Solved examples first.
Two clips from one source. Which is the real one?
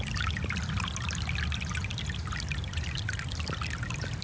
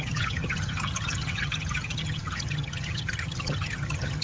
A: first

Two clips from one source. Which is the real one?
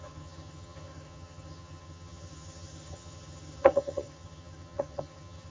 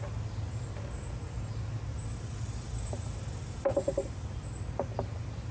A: second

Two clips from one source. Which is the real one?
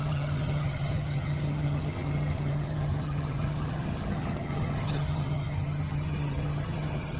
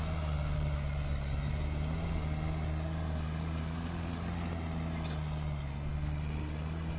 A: second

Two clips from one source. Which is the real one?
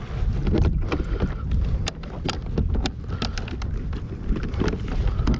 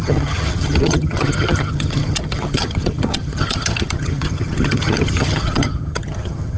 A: first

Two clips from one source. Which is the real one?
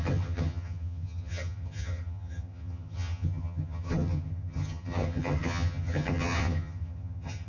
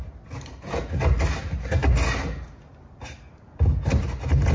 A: second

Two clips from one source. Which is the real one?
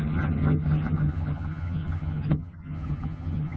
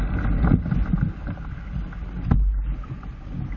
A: second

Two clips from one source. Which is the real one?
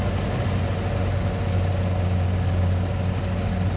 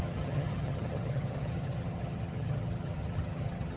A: first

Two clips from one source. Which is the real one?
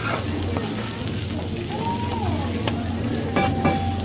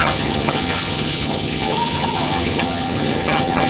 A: first